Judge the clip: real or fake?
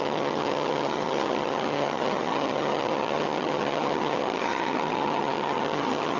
fake